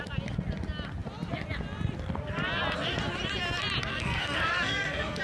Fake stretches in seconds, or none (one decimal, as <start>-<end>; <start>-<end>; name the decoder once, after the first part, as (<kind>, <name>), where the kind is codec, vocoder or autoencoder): 3.9-5.2 (codec, SNAC)